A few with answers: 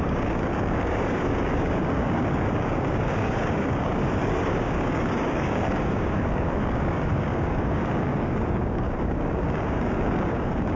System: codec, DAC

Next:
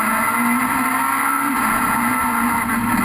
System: none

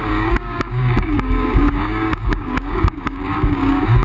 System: codec, DAC